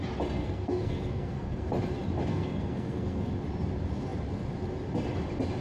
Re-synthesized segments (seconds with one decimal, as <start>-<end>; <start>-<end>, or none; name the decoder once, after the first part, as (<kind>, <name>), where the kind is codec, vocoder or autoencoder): 0.4-1.7 (codec, SNAC); 2.3-3.3